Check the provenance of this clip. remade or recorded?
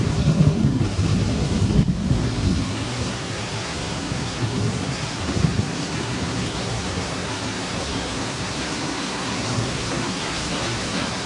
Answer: remade